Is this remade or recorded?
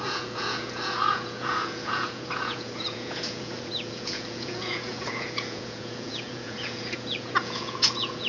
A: remade